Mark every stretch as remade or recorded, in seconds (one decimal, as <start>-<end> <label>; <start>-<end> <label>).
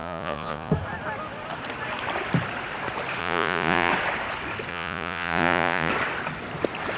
0.0-0.7 remade; 0.7-3.2 recorded; 3.2-3.9 remade; 3.9-4.7 recorded; 4.7-5.9 remade; 5.9-7.0 recorded